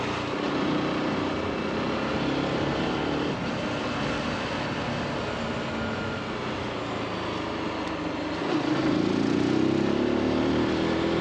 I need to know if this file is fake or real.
real